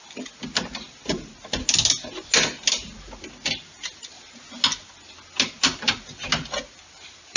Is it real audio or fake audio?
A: real